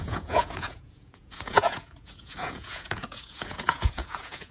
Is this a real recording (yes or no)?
no